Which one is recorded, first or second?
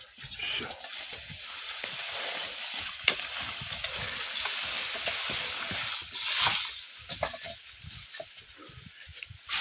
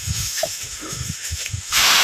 first